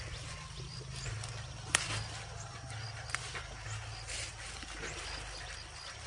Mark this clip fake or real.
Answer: real